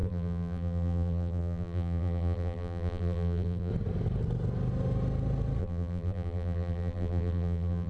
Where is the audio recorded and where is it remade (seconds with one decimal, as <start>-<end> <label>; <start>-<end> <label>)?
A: 0.0-3.7 remade; 3.7-5.6 recorded; 5.6-7.9 remade